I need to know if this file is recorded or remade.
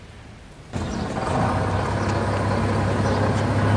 recorded